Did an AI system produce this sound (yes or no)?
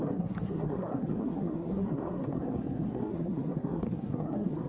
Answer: yes